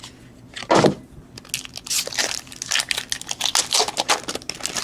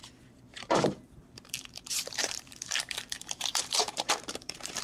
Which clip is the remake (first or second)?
second